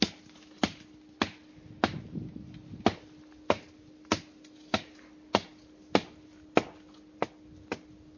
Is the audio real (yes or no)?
yes